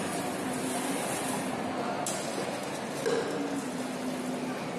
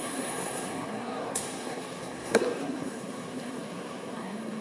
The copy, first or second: second